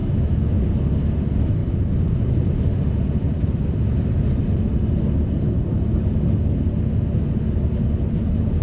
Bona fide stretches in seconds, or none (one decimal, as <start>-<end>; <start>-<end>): 0.6-8.6